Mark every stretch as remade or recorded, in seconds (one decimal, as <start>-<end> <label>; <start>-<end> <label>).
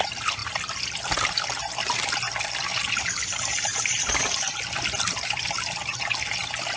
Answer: 0.0-2.7 remade; 2.7-3.2 recorded; 3.2-3.7 remade; 3.7-4.2 recorded; 4.2-5.9 remade; 5.9-6.8 recorded